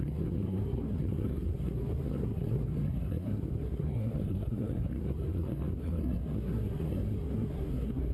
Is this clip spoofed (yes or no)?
yes